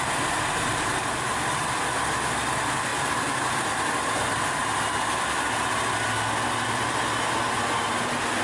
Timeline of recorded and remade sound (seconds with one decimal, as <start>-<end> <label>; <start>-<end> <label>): 0.0-8.4 recorded